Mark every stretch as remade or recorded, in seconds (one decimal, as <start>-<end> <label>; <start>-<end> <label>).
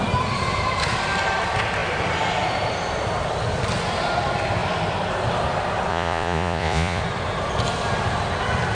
0.0-5.9 recorded; 5.9-7.0 remade; 7.0-8.7 recorded